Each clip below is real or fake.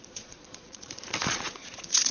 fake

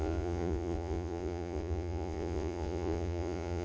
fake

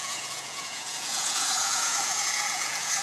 fake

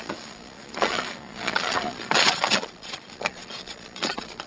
fake